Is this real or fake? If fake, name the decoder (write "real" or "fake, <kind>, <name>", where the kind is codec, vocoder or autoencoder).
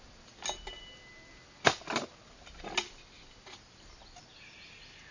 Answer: real